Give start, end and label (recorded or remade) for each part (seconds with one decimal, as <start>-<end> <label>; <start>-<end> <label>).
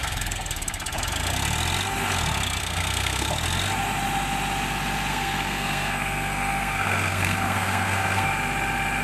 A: 0.0-0.8 remade; 0.8-2.6 recorded; 2.6-3.3 remade; 3.3-5.1 recorded; 5.1-8.3 remade; 8.3-9.0 recorded